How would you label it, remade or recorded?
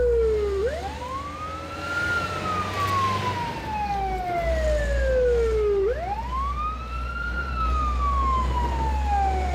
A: recorded